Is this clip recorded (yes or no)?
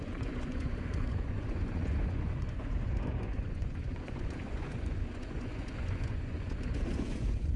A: no